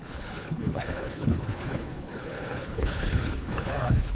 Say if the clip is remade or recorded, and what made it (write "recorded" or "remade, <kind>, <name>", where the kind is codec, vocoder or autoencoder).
remade, codec, HILCodec